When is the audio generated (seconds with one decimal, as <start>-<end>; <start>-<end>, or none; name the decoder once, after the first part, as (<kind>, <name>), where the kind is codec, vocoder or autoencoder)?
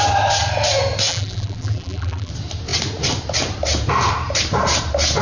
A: 1.1-2.3 (vocoder, BigVGAN v2)